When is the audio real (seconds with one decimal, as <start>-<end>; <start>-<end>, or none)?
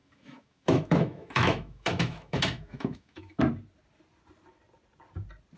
3.4-5.6